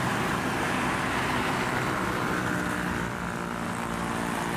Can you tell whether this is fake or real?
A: real